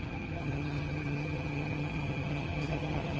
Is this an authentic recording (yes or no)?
no